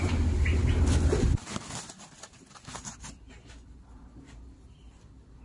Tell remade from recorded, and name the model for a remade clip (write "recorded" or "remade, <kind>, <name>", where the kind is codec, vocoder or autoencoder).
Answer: recorded